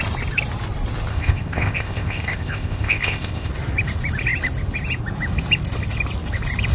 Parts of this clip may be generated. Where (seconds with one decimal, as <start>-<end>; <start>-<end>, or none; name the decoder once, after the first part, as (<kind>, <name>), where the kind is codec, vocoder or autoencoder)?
1.1-3.5 (codec, ZipCodec)